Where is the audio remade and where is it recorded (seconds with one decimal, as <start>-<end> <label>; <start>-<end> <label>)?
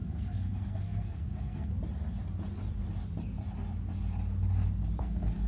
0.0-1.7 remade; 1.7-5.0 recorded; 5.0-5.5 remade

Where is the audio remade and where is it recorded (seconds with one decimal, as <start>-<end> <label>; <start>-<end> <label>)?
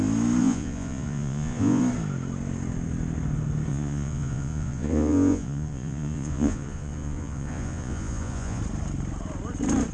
0.0-0.4 recorded; 0.4-1.8 remade; 1.8-3.7 recorded; 3.7-8.6 remade; 8.6-9.9 recorded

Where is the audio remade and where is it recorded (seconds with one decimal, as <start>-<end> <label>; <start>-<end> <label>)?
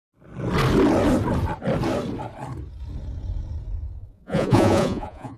0.0-4.0 recorded; 4.0-5.4 remade